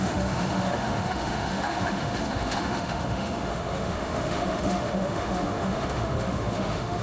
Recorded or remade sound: remade